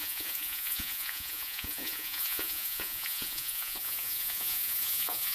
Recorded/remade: remade